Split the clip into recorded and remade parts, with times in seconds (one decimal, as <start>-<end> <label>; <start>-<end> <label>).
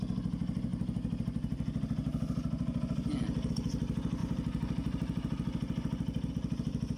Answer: 0.0-7.0 recorded